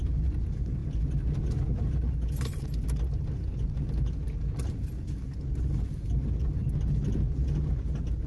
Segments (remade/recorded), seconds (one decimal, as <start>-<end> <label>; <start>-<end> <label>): 0.0-8.3 recorded